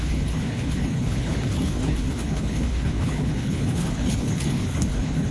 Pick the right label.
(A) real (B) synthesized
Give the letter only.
B